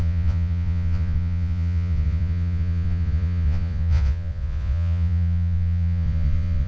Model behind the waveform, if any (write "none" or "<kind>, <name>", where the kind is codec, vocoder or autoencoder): vocoder, Vocos